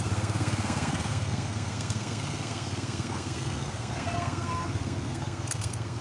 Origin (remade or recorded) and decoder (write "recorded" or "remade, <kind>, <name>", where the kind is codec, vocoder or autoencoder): remade, codec, SNAC